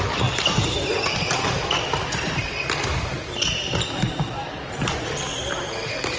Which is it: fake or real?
real